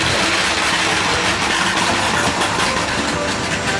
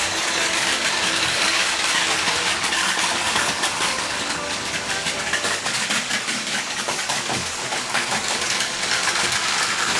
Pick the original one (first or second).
first